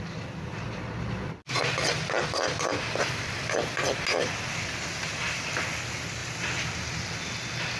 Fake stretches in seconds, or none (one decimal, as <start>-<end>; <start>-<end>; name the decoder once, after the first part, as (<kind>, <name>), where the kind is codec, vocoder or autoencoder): none